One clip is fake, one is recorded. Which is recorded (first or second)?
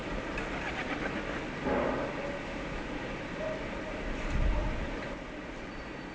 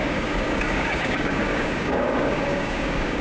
first